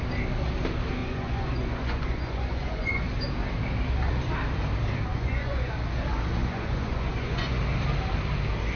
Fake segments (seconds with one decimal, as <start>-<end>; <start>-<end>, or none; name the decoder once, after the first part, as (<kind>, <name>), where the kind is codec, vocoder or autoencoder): 1.0-3.0 (vocoder, Vocos); 5.1-5.7; 6.4-7.6